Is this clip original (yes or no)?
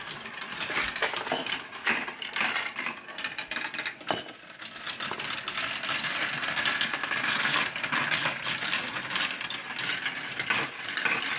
yes